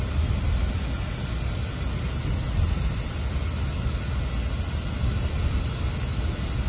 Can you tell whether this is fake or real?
real